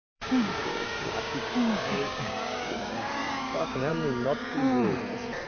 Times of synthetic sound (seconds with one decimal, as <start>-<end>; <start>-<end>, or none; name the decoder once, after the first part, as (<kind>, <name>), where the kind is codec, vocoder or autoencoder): 0.0-4.6 (codec, DAC)